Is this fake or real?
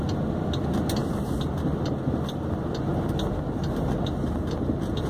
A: real